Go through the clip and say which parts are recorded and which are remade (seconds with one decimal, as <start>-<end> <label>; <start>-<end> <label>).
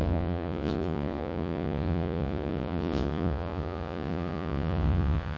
0.0-5.4 remade